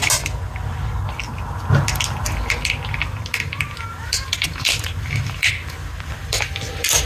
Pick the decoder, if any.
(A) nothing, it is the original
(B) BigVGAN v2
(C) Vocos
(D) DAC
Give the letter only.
A